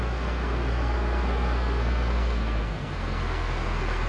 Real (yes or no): no